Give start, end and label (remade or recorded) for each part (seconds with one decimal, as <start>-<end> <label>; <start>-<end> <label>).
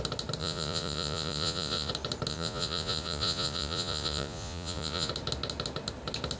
0.0-0.4 recorded; 0.4-1.9 remade; 1.9-2.3 recorded; 2.3-5.1 remade; 5.1-6.4 recorded